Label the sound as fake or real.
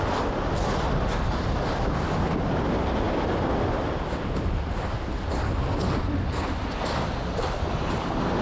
real